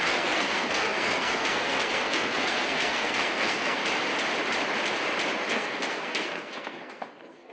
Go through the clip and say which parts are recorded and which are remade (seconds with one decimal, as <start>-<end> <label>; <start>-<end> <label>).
0.0-3.8 remade; 3.8-5.5 recorded; 5.5-7.5 remade